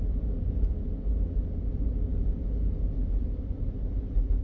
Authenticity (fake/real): real